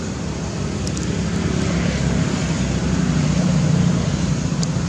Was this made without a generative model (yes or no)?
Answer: yes